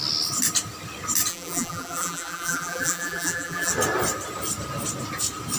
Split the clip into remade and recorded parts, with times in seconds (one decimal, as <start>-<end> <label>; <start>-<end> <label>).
0.0-1.3 recorded; 1.3-3.7 remade; 3.7-5.6 recorded